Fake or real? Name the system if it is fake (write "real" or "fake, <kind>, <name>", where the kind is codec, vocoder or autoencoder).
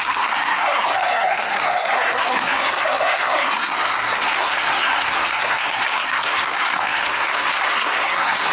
fake, codec, SNAC